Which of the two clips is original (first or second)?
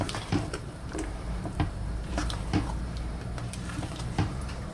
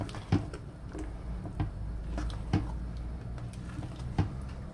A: second